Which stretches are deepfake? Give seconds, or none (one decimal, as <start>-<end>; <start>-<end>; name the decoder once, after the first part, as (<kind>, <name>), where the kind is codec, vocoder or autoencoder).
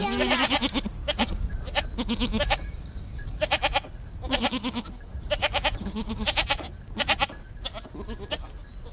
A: 1.0-1.5 (codec, DAC); 2.3-3.4; 5.4-6.1